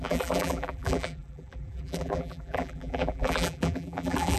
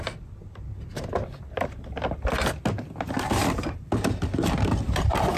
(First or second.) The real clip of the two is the second